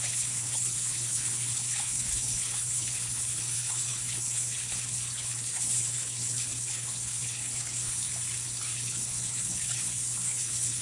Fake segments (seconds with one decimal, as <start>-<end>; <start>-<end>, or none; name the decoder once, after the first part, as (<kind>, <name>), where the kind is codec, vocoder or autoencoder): 0.0-8.1 (codec, HILCodec); 8.6-10.8